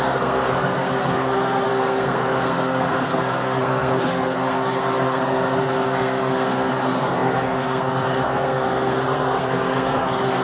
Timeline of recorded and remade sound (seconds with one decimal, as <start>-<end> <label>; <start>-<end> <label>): 0.0-10.4 remade